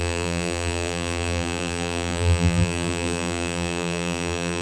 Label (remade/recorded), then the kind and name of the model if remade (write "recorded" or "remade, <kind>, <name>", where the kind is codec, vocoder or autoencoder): remade, vocoder, BigVGAN v2